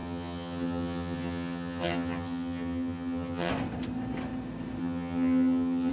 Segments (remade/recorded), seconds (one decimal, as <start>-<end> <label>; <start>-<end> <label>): 0.0-3.5 remade; 3.5-4.8 recorded; 4.8-5.9 remade

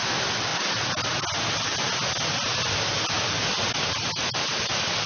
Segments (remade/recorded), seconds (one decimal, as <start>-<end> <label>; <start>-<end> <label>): 0.0-5.1 recorded

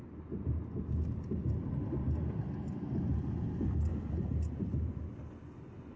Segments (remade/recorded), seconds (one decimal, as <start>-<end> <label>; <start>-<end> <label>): 0.0-6.0 recorded

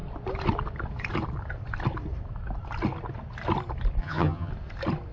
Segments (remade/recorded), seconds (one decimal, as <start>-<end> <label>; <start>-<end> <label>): 0.0-4.0 recorded; 4.0-4.5 remade; 4.5-5.1 recorded

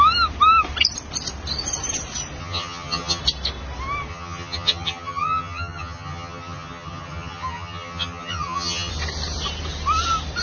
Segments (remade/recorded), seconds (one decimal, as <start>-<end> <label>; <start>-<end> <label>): 0.0-2.4 recorded; 2.4-3.2 remade; 3.2-4.1 recorded; 4.1-8.9 remade; 8.9-10.4 recorded

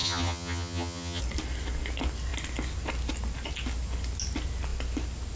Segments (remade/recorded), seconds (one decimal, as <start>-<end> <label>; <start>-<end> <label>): 0.0-1.2 remade; 1.2-5.4 recorded

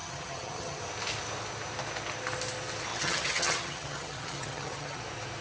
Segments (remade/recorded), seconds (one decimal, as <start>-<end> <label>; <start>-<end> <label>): 0.0-0.8 remade; 0.8-2.9 recorded; 2.9-5.0 remade; 5.0-5.4 recorded